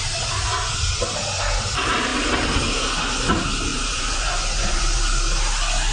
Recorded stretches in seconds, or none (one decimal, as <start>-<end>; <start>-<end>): 0.0-3.7; 5.0-5.9